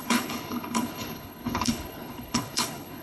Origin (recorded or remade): remade